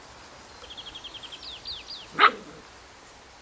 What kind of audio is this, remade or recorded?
recorded